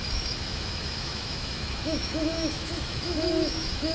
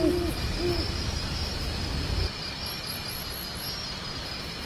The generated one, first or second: first